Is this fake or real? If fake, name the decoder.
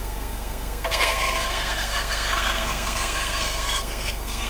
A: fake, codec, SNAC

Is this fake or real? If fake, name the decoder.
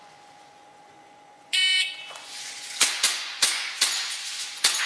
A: fake, vocoder, Vocos